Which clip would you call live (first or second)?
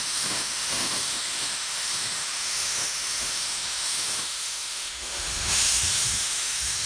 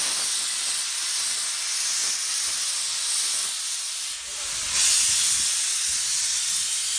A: second